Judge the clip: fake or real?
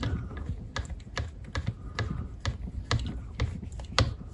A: real